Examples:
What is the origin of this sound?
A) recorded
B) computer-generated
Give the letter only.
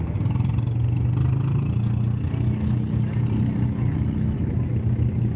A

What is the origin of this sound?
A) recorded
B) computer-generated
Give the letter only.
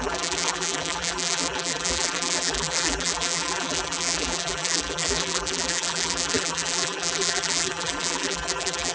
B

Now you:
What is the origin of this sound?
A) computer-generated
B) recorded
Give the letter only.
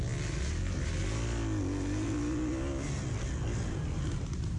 B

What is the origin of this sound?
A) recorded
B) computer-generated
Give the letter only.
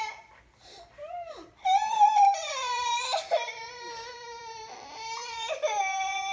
B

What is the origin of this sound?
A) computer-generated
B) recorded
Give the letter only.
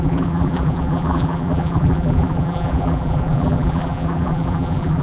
A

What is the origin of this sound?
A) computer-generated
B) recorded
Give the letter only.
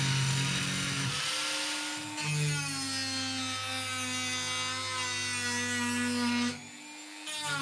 B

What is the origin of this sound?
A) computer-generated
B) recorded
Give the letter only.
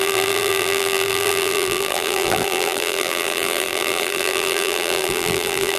A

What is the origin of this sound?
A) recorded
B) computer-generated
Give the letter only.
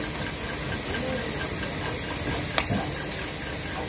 A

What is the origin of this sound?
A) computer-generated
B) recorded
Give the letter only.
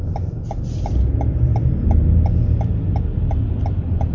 B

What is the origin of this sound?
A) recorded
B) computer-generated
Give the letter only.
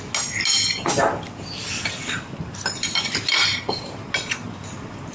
A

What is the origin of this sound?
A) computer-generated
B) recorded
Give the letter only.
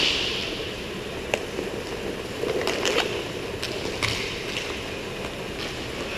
B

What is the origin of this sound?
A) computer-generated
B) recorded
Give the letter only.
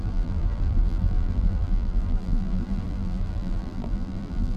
A